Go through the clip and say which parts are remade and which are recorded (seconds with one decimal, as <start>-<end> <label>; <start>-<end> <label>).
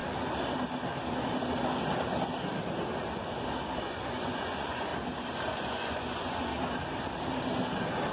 0.0-3.8 recorded; 3.8-4.9 remade; 4.9-5.5 recorded; 5.5-6.5 remade; 6.5-8.1 recorded